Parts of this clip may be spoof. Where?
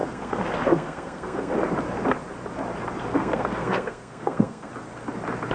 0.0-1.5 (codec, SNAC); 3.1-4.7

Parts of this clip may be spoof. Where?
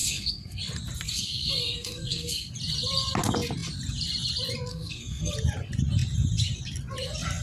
0.0-0.6 (codec, SNAC); 1.1-2.5; 4.7-5.3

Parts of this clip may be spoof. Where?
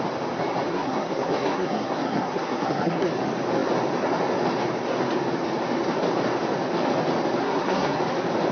0.7-3.1 (codec, SNAC); 7.4-8.0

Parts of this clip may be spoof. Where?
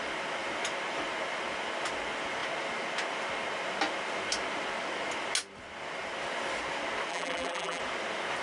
7.1-7.8 (vocoder, BigVGAN v2)